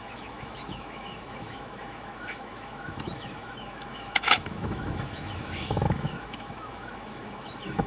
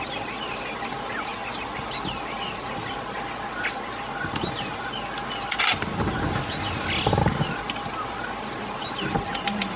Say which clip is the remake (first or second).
first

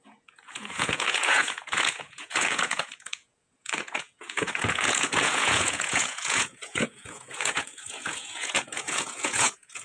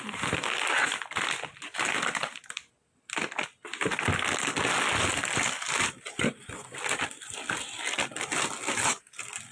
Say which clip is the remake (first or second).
first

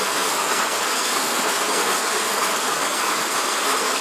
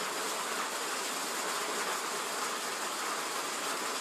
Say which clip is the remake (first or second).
first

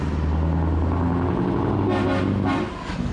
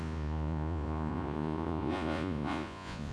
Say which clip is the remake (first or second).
second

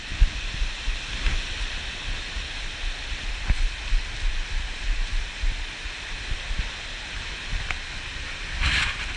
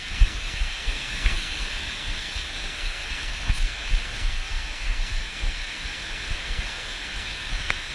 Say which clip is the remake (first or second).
second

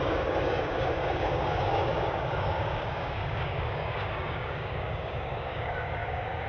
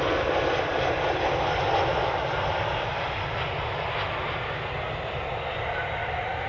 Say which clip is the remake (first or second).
first